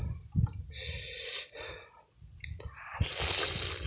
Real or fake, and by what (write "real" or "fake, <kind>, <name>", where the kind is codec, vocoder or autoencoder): real